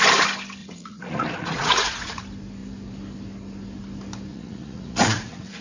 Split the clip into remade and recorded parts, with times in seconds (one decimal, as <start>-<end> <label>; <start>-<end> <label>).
0.0-0.6 recorded; 0.6-2.2 remade; 2.2-4.3 recorded; 4.3-5.6 remade